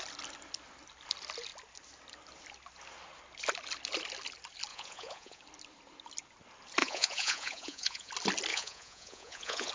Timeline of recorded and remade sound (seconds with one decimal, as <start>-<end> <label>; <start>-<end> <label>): 0.0-4.7 recorded; 4.7-5.4 remade; 5.4-6.8 recorded; 6.8-8.1 remade; 8.1-8.5 recorded; 8.5-9.7 remade